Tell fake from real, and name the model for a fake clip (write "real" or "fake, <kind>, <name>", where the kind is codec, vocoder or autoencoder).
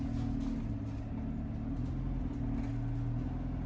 real